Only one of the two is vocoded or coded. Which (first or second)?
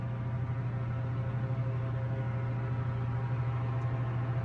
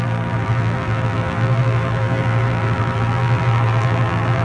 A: second